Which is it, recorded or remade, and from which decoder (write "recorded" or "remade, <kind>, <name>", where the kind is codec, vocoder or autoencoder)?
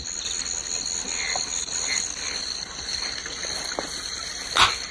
recorded